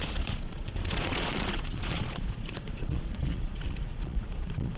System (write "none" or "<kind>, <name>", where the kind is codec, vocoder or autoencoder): vocoder, Vocos